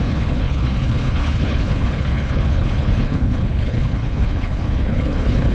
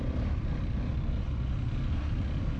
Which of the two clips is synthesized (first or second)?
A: first